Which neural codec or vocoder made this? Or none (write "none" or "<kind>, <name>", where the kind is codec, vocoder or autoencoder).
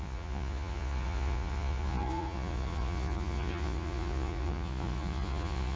vocoder, Vocos